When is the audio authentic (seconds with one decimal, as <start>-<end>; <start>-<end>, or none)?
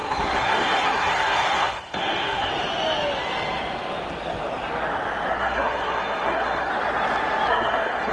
2.5-5.3; 6.7-7.5